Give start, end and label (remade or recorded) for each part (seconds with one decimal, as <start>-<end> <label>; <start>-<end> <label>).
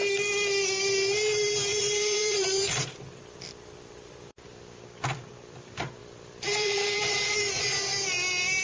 0.0-1.6 recorded; 1.6-4.8 remade; 4.8-6.0 recorded; 6.0-7.4 remade; 7.4-8.6 recorded